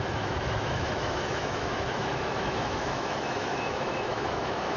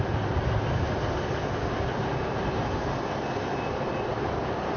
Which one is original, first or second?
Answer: second